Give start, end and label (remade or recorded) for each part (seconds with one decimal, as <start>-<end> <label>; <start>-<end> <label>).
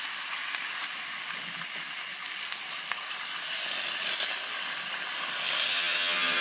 0.0-5.7 recorded; 5.7-6.4 remade